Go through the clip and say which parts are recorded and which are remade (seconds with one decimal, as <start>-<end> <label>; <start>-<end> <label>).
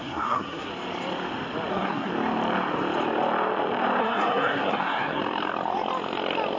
0.0-0.7 remade; 0.7-1.7 recorded; 1.7-2.1 remade; 2.1-4.0 recorded; 4.0-5.2 remade; 5.2-6.6 recorded